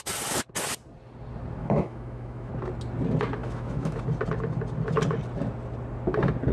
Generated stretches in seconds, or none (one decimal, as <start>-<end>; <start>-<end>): 1.6-2.5; 3.4-4.0